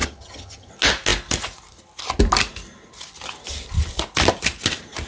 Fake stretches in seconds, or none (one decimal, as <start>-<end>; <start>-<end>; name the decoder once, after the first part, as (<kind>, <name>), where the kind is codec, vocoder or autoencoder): 0.0-0.7 (vocoder, HiFi-GAN)